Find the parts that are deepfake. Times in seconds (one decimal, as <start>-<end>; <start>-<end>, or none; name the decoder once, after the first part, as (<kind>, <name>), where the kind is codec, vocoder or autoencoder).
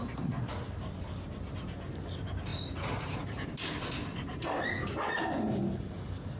2.5-3.5 (vocoder, BigVGAN v2); 4.1-4.7